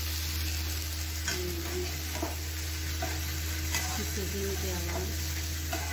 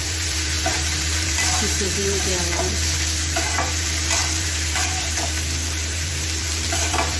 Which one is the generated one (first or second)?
second